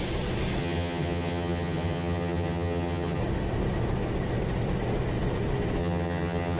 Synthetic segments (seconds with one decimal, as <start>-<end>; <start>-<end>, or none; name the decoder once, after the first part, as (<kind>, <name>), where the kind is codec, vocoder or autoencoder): 0.6-3.2 (vocoder, HiFi-GAN); 5.8-6.6